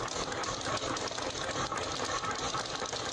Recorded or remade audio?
recorded